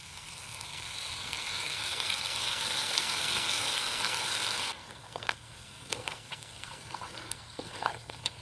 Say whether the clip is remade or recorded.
remade